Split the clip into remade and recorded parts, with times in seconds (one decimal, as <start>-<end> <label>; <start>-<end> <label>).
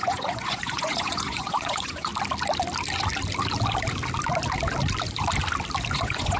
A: 0.0-2.1 remade; 2.1-5.9 recorded; 5.9-6.4 remade